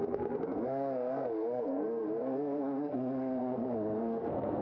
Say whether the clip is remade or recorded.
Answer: remade